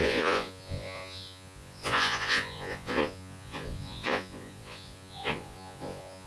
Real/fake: fake